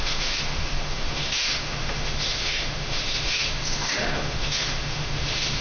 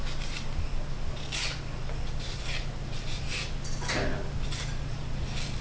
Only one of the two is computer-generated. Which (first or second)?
first